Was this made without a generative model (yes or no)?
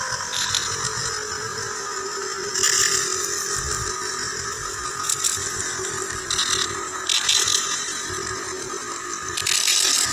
yes